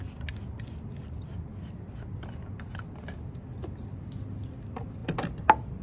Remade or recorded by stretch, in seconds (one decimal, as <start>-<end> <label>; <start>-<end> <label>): 0.0-5.8 recorded